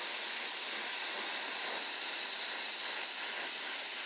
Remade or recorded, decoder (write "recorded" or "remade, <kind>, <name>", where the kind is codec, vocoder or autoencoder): recorded